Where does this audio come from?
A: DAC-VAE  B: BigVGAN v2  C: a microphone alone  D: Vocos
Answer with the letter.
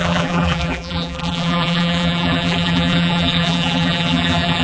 B